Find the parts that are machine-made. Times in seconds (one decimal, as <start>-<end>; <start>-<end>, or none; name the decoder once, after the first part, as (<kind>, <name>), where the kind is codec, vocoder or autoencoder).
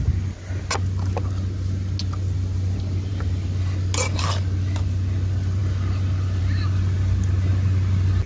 none